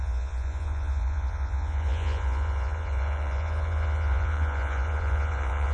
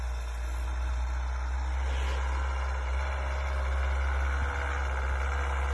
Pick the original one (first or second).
second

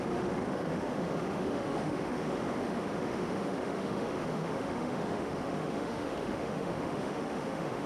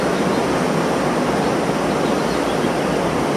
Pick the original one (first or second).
second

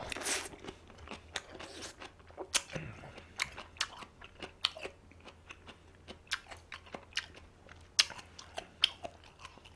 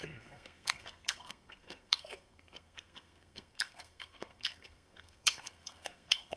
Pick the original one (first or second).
first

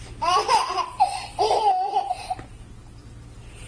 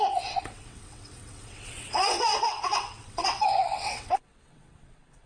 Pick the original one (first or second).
first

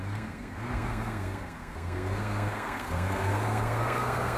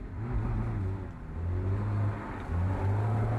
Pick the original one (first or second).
second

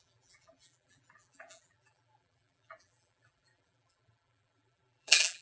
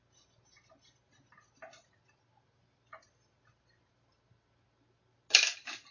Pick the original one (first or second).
second